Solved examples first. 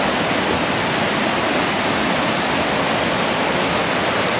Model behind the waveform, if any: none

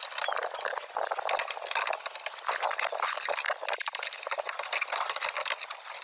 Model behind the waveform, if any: none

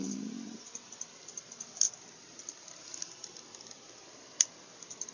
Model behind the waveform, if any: vocoder, BigVGAN v2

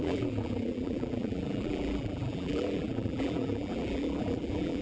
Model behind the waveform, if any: vocoder, BigVGAN v2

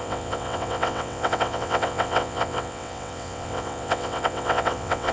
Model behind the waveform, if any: vocoder, WaveNeXt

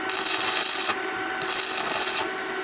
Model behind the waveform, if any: none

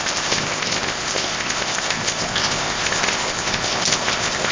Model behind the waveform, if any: codec, ZipCodec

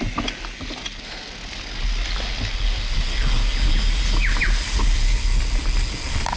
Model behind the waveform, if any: none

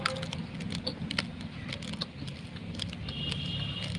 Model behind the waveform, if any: none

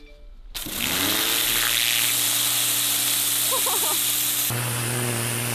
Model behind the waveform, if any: none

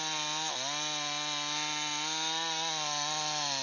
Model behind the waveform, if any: none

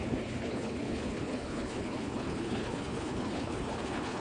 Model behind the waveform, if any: codec, HILCodec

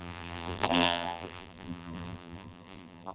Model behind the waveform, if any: vocoder, BigVGAN v2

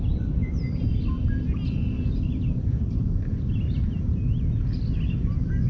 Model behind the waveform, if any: none